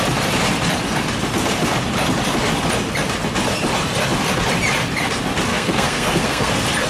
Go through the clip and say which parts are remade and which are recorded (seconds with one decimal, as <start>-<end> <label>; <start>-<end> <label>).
0.0-5.5 recorded; 5.5-6.5 remade; 6.5-6.9 recorded